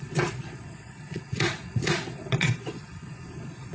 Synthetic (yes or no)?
yes